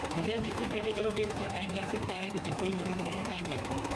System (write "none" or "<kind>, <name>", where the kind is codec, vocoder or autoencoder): codec, SNAC